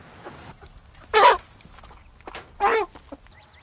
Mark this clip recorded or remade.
recorded